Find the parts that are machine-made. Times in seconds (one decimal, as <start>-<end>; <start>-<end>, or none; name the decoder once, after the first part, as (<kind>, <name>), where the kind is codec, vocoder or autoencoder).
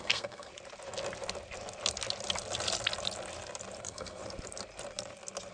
0.0-0.5 (codec, SNAC); 3.8-4.2